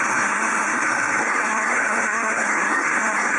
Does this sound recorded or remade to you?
remade